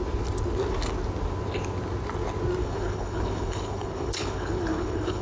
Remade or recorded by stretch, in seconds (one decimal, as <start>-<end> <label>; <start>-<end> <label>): 0.0-2.6 recorded; 2.6-5.2 remade